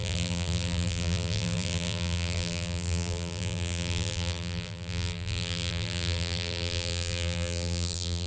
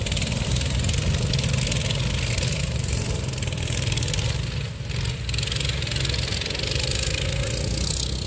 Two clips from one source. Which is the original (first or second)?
second